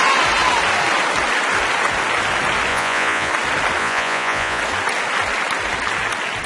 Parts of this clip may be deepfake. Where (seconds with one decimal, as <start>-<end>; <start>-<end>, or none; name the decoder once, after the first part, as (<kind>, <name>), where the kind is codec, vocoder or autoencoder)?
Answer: 2.7-3.3 (vocoder, Vocos); 3.8-4.6